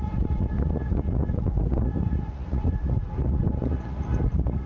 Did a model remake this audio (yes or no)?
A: yes